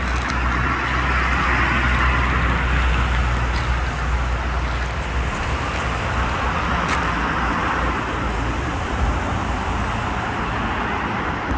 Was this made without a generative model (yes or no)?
yes